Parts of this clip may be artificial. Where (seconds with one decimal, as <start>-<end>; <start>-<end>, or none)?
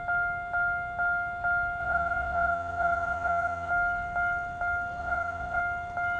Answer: 1.8-3.7; 5.0-5.6